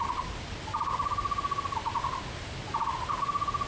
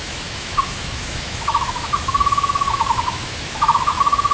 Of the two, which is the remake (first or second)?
second